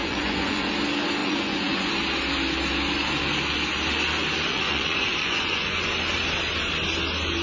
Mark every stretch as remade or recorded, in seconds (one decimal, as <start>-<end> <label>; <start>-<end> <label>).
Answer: 0.0-0.7 remade; 0.7-1.2 recorded; 1.2-1.9 remade; 1.9-4.5 recorded; 4.5-5.9 remade; 5.9-7.4 recorded